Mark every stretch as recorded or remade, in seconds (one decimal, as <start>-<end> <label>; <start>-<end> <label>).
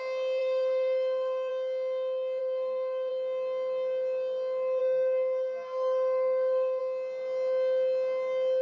0.0-0.4 recorded; 0.4-1.5 remade; 1.5-2.4 recorded; 2.4-3.1 remade; 3.1-4.8 recorded; 4.8-6.8 remade; 6.8-8.6 recorded